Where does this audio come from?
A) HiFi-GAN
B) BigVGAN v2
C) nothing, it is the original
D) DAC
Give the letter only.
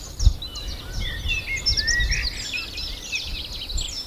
C